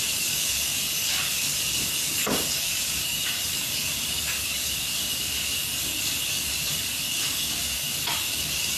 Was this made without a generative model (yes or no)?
no